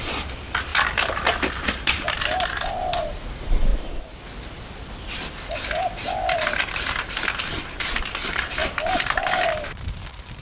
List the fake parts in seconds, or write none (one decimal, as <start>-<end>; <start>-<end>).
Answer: 0.0-3.7; 6.7-10.4